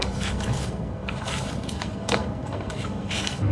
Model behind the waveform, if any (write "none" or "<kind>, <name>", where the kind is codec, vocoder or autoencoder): codec, SNAC